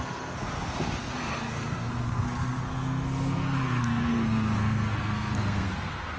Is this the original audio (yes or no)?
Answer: no